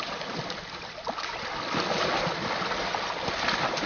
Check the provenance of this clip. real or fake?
real